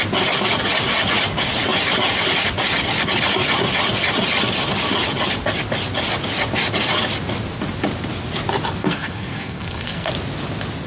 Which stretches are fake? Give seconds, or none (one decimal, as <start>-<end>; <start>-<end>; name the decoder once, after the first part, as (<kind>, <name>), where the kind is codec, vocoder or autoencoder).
8.8-10.1 (codec, SNAC)